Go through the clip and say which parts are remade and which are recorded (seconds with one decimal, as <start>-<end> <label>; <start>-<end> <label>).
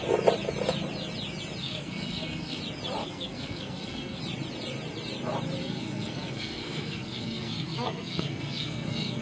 0.0-1.6 recorded; 1.6-2.6 remade; 2.6-3.0 recorded; 3.0-4.2 remade; 4.2-5.6 recorded; 5.6-9.2 remade